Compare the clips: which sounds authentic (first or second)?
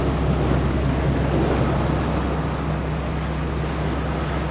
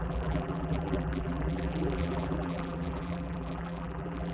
first